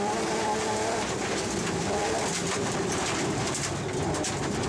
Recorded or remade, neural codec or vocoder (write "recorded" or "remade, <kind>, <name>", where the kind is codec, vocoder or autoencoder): remade, vocoder, BigVGAN v2